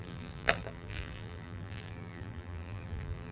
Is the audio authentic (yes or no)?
no